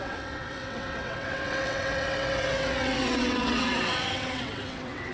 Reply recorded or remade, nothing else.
remade